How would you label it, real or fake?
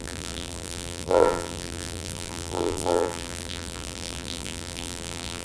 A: fake